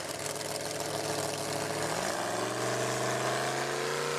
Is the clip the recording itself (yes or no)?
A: yes